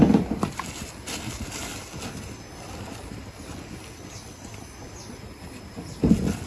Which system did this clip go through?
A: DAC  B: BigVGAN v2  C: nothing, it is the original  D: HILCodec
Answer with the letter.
C